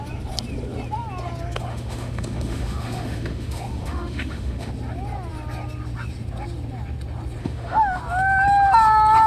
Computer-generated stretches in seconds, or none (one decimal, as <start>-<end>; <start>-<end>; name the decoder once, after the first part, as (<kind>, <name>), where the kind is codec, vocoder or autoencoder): 1.7-4.7 (autoencoder, DAC-VAE); 7.4-8.0